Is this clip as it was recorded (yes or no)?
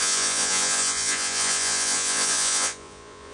no